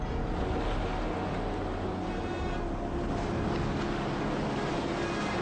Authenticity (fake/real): real